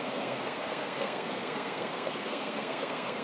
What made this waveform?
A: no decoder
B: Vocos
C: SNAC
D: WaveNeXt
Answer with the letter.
C